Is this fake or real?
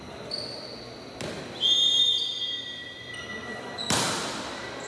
real